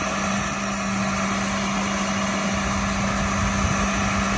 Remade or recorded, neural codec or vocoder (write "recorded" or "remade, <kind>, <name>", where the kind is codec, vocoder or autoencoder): recorded